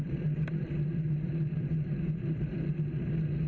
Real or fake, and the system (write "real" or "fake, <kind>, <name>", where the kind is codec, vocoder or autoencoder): fake, vocoder, BigVGAN v2